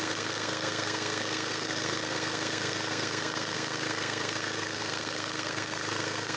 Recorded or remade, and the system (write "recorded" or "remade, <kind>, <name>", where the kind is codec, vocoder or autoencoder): remade, codec, SNAC